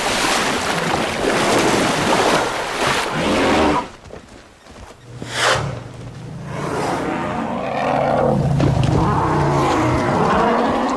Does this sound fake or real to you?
real